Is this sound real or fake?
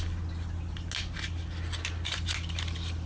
real